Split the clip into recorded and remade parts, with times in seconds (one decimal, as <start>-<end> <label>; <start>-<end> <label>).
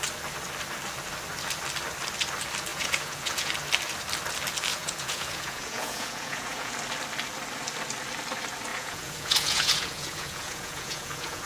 0.0-2.7 recorded; 2.7-3.5 remade; 3.5-4.7 recorded; 4.7-6.7 remade; 6.7-8.7 recorded; 8.7-11.5 remade